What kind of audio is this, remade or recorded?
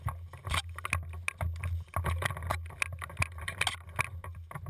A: recorded